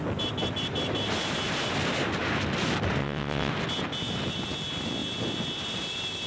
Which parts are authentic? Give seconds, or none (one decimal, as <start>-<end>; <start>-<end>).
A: 0.0-3.0; 3.5-6.3